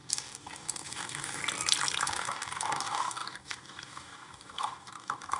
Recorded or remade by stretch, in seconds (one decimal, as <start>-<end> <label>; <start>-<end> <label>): 0.0-1.4 remade; 1.4-2.0 recorded; 2.0-5.4 remade